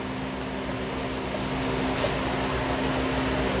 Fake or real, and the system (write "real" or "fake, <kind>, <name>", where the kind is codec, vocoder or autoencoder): real